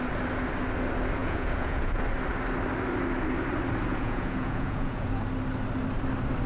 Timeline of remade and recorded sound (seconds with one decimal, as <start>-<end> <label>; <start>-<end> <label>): 0.0-1.2 recorded; 1.2-2.0 remade; 2.0-3.9 recorded; 3.9-5.2 remade; 5.2-6.5 recorded